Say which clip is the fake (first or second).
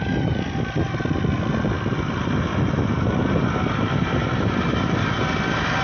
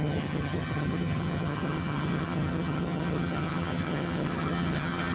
second